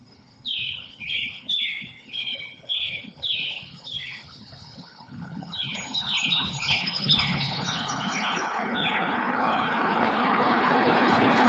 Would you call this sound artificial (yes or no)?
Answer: yes